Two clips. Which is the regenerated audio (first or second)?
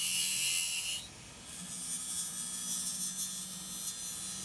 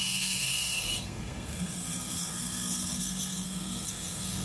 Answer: second